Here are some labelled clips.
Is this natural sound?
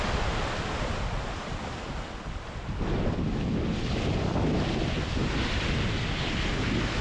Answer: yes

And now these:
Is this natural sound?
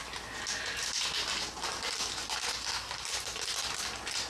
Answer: yes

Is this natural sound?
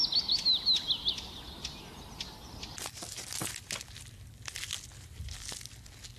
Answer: yes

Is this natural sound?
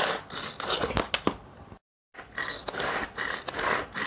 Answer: yes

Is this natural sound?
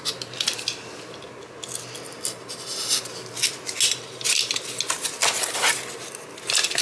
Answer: yes